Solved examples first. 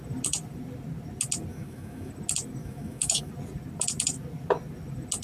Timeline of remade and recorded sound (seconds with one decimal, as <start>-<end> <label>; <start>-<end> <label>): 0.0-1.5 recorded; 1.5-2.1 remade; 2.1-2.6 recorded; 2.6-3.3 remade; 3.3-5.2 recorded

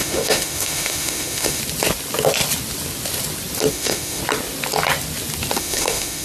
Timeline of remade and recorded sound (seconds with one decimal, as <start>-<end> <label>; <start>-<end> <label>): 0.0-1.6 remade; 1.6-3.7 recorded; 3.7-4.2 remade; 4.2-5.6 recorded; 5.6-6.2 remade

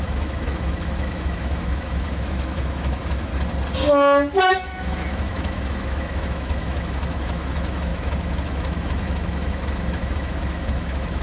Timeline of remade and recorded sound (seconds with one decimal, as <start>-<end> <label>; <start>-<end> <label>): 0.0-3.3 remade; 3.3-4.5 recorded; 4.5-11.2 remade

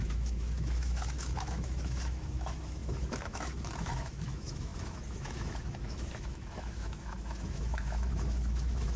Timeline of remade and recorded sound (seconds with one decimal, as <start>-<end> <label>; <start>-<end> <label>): 0.0-9.0 remade

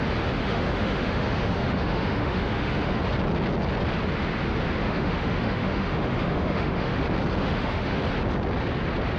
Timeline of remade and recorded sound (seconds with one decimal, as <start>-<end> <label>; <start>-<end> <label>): 0.0-0.4 recorded; 0.4-3.0 remade; 3.0-4.8 recorded; 4.8-7.0 remade; 7.0-7.4 recorded; 7.4-8.0 remade; 8.0-9.2 recorded